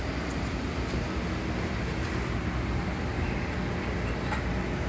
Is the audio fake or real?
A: real